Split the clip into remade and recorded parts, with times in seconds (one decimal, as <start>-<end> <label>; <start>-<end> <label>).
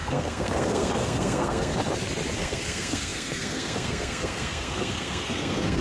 0.0-1.7 remade; 1.7-2.4 recorded; 2.4-5.8 remade